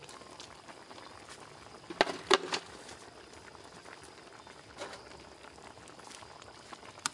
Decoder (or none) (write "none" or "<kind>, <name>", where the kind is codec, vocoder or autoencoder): none